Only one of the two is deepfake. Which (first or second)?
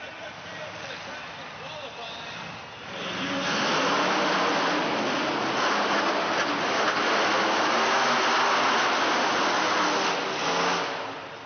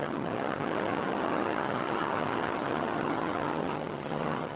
second